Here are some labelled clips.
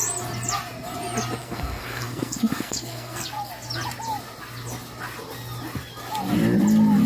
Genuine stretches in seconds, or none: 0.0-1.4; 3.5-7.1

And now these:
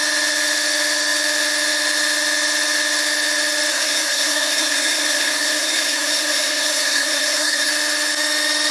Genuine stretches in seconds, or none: 0.0-3.7; 7.7-8.7

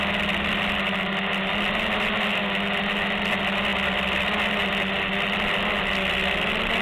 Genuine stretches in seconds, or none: 0.0-6.8

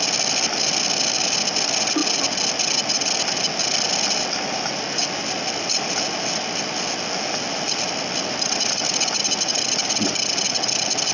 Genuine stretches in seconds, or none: 0.0-11.1